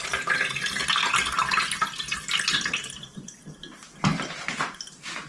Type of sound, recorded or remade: recorded